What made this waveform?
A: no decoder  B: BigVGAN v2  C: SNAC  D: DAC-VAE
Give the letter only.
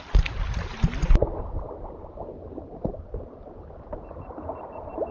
A